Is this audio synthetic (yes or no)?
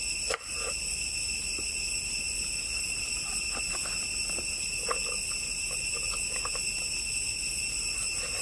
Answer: no